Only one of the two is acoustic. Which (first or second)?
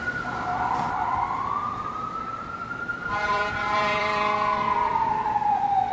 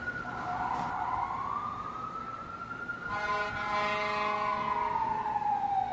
second